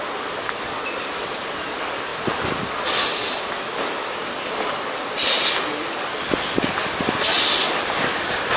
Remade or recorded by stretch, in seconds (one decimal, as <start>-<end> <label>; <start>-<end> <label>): 0.0-8.6 recorded